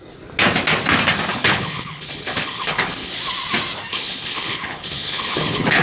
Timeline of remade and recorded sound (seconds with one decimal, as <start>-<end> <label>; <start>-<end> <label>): 0.0-1.3 recorded; 1.3-3.1 remade; 3.1-3.9 recorded; 3.9-5.8 remade